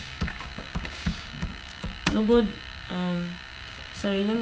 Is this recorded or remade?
remade